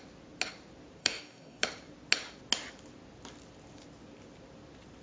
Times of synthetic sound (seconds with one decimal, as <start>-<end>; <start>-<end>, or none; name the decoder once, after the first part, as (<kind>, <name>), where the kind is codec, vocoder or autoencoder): 1.0-1.6 (codec, DAC)